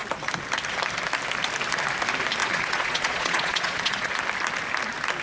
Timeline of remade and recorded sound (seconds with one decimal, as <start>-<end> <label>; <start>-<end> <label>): 0.0-2.4 recorded; 2.4-4.1 remade; 4.1-5.2 recorded